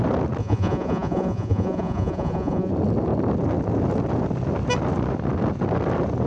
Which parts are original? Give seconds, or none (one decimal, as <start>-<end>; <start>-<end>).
0.0-0.4; 2.7-6.3